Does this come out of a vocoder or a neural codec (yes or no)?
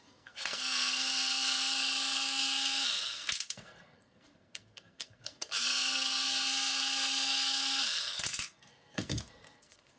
yes